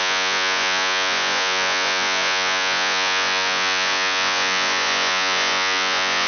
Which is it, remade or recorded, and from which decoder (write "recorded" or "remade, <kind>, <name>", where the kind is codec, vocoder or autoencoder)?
remade, vocoder, Vocos